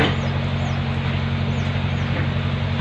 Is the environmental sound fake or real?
real